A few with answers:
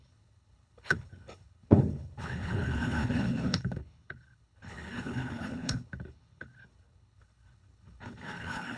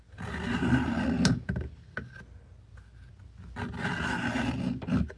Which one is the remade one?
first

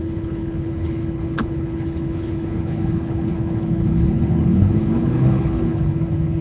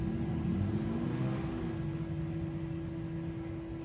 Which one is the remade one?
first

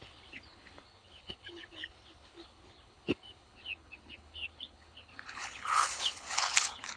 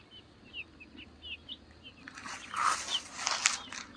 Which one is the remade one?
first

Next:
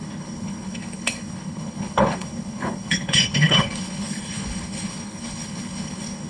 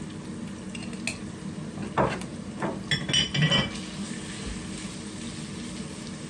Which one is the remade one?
first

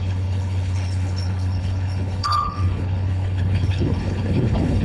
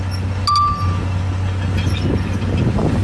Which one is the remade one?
first